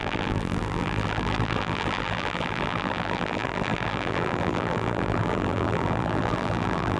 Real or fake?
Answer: fake